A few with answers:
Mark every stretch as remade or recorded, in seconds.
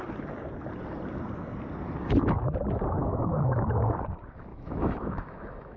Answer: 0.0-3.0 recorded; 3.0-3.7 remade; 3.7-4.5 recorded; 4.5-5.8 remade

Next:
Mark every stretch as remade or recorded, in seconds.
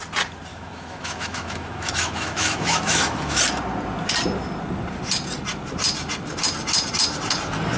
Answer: 0.0-0.5 recorded; 0.5-3.4 remade; 3.4-7.8 recorded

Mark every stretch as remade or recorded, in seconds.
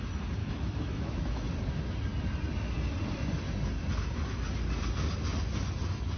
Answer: 0.0-0.4 recorded; 0.4-1.5 remade; 1.5-6.2 recorded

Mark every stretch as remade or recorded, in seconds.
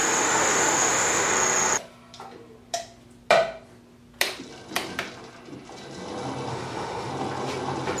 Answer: 0.0-1.3 remade; 1.3-6.5 recorded; 6.5-7.1 remade; 7.1-8.0 recorded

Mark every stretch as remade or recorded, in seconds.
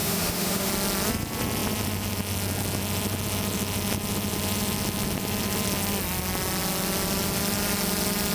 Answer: 0.0-0.7 remade; 0.7-8.3 recorded